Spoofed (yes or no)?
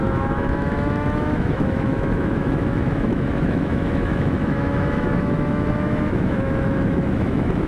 yes